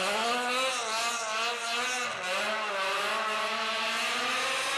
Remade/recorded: recorded